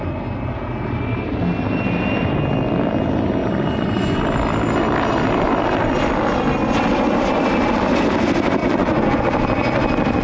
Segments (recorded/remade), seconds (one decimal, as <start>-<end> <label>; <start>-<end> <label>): 0.0-3.4 recorded; 3.4-4.2 remade; 4.2-8.6 recorded; 8.6-9.2 remade; 9.2-10.2 recorded